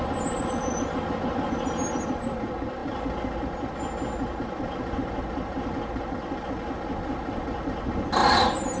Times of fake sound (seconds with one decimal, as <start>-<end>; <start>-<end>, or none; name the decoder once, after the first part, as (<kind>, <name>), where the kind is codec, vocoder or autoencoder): 8.2-8.8 (vocoder, BigVGAN v2)

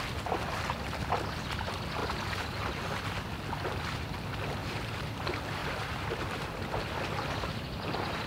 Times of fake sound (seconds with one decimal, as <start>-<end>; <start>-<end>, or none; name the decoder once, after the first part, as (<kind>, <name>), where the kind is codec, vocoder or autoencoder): 4.6-5.1 (vocoder, BigVGAN v2); 5.6-6.4

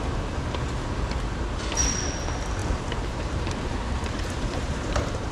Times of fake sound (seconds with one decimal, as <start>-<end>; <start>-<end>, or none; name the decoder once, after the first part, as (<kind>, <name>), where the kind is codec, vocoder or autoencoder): 2.6-5.3 (vocoder, BigVGAN v2)